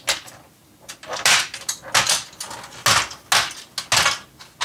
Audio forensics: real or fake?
real